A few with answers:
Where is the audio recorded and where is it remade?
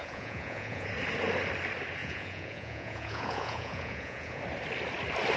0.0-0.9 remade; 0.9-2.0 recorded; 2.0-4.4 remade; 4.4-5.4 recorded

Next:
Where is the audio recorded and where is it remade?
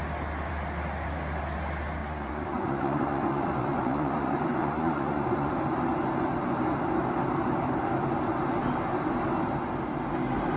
0.0-2.0 recorded; 2.0-5.5 remade; 5.5-10.6 recorded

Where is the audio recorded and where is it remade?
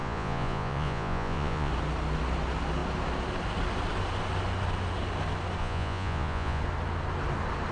0.0-1.7 remade; 1.7-5.6 recorded; 5.6-6.6 remade; 6.6-7.7 recorded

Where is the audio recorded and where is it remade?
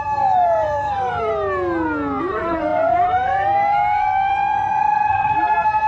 0.0-1.3 remade; 1.3-2.2 recorded; 2.2-5.9 remade